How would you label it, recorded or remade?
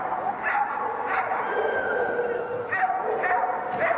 recorded